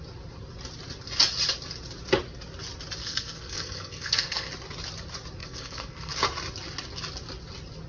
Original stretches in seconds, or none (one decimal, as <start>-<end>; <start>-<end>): 0.0-3.0; 4.5-5.4; 6.1-7.9